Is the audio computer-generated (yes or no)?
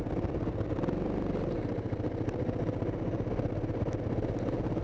no